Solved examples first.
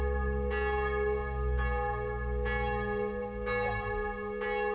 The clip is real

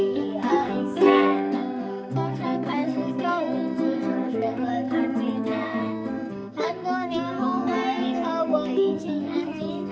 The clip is fake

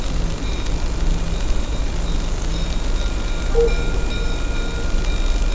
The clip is real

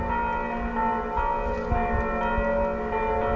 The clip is real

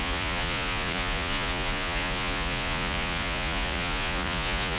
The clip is fake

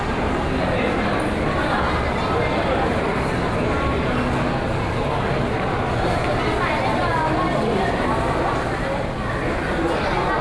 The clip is real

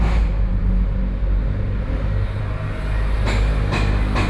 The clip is real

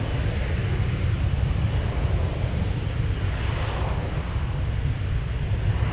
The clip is real